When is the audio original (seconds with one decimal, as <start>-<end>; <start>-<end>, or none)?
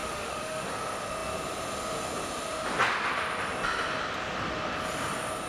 0.7-5.5